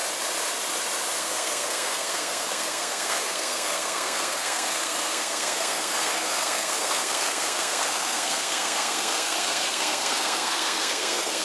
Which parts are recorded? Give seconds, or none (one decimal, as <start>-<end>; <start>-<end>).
0.0-1.2